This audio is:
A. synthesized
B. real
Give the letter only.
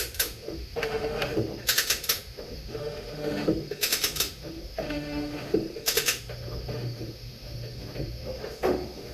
A